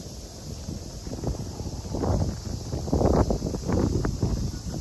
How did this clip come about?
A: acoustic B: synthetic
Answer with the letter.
A